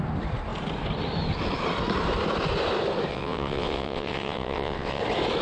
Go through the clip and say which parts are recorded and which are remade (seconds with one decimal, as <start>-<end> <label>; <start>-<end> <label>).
0.0-3.1 recorded; 3.1-5.0 remade; 5.0-5.4 recorded